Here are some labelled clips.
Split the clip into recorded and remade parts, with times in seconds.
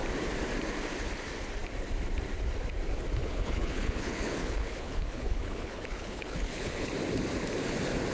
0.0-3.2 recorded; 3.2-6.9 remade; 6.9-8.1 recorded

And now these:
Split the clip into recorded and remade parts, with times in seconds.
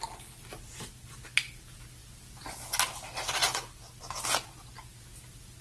0.0-5.6 recorded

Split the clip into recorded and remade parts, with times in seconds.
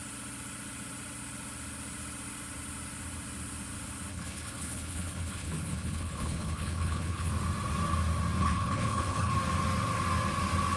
0.0-4.1 recorded; 4.1-7.3 remade; 7.3-8.4 recorded; 8.4-9.3 remade; 9.3-10.8 recorded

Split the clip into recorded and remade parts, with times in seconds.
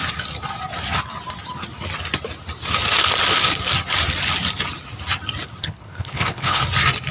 0.0-5.6 recorded; 5.6-6.6 remade; 6.6-7.1 recorded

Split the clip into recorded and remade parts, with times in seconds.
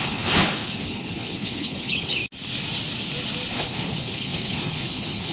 0.0-2.2 remade; 2.2-3.5 recorded; 3.5-5.3 remade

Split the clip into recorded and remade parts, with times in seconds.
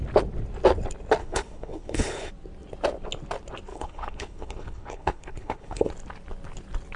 0.0-1.2 recorded; 1.2-2.3 remade; 2.3-3.7 recorded; 3.7-5.9 remade; 5.9-7.0 recorded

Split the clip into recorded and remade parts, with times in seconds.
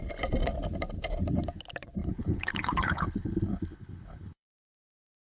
0.0-2.0 recorded; 2.0-5.2 remade